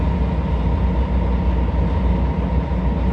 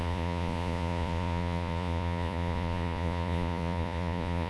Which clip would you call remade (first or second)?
second